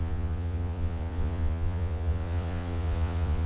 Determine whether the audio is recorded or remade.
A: remade